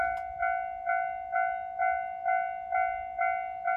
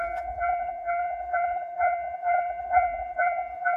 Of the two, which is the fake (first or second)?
second